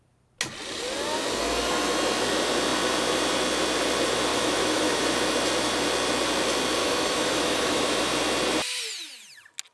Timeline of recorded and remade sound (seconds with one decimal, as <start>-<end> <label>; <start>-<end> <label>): 0.0-4.3 recorded; 4.3-5.0 remade; 5.0-6.8 recorded; 6.8-8.0 remade; 8.0-9.7 recorded